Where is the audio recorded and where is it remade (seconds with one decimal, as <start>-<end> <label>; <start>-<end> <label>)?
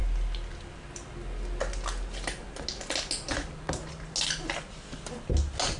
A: 0.0-5.8 recorded